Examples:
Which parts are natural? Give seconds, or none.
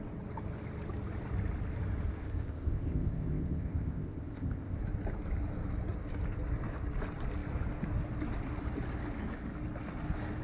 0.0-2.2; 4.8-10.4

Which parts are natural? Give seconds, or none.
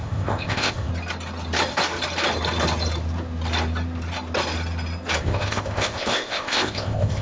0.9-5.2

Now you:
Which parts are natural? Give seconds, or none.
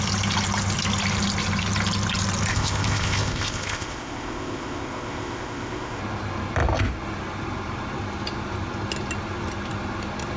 0.0-2.5; 6.0-10.4